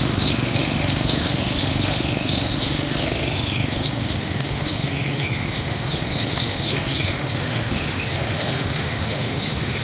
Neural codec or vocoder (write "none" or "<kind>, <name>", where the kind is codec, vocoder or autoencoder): autoencoder, DAC-VAE